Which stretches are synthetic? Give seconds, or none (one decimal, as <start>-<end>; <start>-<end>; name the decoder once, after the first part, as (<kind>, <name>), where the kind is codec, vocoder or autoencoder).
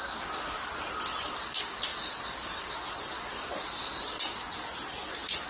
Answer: none